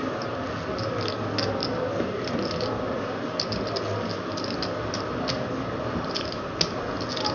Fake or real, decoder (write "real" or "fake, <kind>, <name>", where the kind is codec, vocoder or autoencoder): real